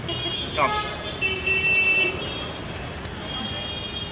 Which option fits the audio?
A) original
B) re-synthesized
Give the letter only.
A